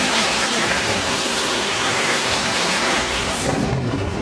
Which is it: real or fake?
fake